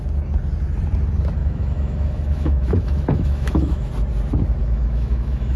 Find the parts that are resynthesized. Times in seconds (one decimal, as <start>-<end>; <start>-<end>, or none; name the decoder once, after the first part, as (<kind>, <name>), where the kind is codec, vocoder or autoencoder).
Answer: 1.4-3.9 (autoencoder, DAC-VAE); 4.6-5.6